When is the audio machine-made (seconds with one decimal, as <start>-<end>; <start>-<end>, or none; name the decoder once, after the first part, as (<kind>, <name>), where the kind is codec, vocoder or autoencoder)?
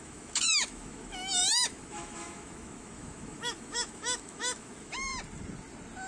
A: 0.0-5.1 (autoencoder, DAC-VAE)